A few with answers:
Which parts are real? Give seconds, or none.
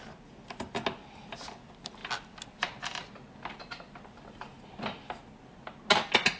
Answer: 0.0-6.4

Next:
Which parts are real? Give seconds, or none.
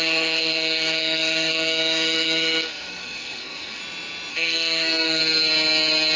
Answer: 3.8-4.3; 5.2-6.2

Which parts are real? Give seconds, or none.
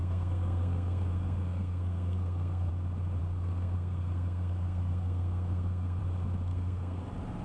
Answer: 2.7-3.2; 6.0-6.5; 7.0-7.4